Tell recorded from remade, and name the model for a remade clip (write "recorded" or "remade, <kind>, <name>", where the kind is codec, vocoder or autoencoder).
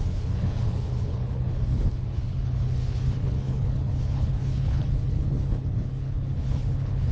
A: remade, codec, HILCodec